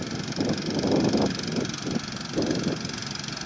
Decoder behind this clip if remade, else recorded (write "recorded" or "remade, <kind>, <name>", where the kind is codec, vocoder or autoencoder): recorded